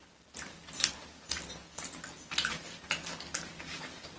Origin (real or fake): real